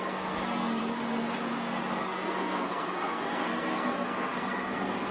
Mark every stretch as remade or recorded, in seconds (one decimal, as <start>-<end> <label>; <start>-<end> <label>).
0.0-0.8 remade; 0.8-2.0 recorded; 2.0-5.1 remade